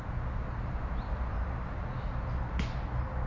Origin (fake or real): real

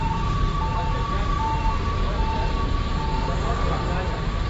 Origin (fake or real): real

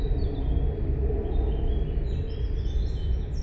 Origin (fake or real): real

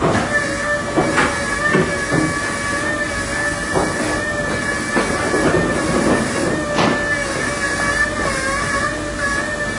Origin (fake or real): real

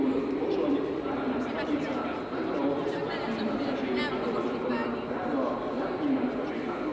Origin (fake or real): fake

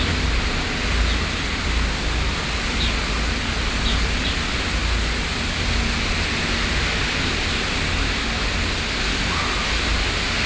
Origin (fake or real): real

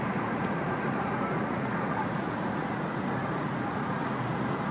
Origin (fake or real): fake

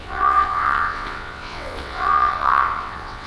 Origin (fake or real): fake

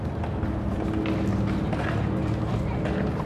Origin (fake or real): real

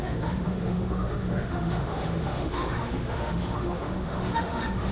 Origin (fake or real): fake